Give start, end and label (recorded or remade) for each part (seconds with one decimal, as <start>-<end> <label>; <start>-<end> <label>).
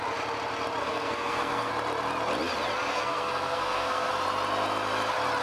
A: 0.0-0.8 recorded; 0.8-1.7 remade; 1.7-2.9 recorded; 2.9-4.1 remade; 4.1-5.4 recorded